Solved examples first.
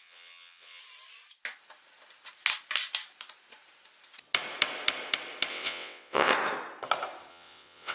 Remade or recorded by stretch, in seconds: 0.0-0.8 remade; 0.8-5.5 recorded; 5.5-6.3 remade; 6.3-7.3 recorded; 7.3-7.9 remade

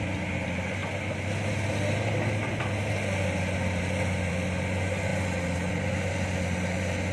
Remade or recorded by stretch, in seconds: 0.0-7.1 recorded

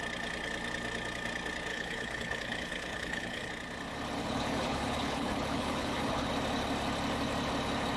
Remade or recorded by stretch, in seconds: 0.0-1.7 recorded; 1.7-3.5 remade; 3.5-4.2 recorded; 4.2-6.3 remade; 6.3-8.0 recorded